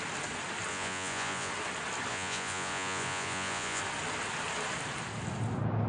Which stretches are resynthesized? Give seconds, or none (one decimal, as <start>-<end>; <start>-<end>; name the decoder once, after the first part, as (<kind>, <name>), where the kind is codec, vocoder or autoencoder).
0.7-1.5 (vocoder, Vocos); 2.1-3.8

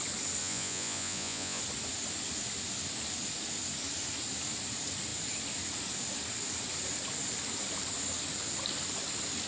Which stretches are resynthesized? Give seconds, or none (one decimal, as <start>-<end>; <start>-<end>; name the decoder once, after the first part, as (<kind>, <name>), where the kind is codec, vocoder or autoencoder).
0.4-1.6 (vocoder, Vocos)

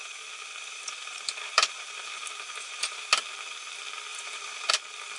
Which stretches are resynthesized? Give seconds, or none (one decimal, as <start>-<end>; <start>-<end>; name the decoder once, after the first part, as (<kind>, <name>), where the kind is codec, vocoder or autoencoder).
0.0-3.1 (vocoder, BigVGAN v2); 4.1-4.7

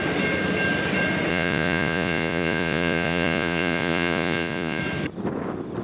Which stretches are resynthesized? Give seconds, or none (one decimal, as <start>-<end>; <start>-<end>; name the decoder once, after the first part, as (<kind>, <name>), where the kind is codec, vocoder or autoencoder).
1.3-4.8 (vocoder, Vocos)

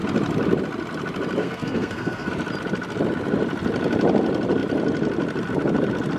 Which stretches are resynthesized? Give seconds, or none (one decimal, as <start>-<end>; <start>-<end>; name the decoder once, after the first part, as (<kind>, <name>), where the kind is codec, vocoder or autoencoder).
1.4-2.3 (codec, SNAC)

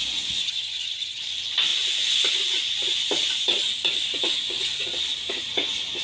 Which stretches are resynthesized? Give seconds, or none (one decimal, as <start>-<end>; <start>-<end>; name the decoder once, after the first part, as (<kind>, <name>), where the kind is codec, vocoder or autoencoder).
0.4-1.2 (vocoder, HiFi-GAN)

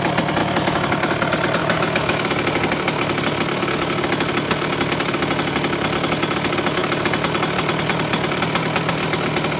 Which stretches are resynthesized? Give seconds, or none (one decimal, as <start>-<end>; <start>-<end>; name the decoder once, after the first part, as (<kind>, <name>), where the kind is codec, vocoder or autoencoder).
0.4-1.1 (autoencoder, DAC-VAE); 1.6-2.3

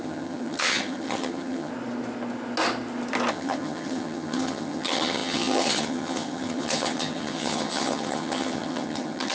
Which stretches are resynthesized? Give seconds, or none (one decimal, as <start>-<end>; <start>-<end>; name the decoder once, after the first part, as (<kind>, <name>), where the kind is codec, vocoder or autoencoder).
0.0-1.7 (vocoder, HiFi-GAN); 3.3-9.3